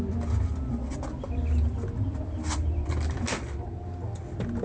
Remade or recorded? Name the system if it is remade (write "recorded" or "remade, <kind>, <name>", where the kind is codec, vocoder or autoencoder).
recorded